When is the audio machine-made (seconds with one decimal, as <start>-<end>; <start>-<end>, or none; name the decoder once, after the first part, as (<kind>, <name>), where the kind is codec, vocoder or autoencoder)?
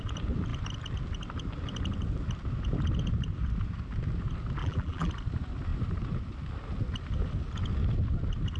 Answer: 4.6-5.1 (vocoder, BigVGAN v2)